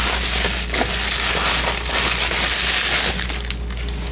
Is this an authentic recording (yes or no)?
yes